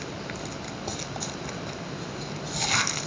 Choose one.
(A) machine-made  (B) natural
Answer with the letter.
B